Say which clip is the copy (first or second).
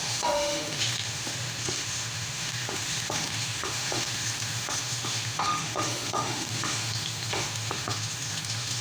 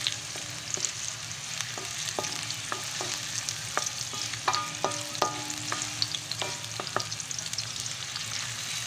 first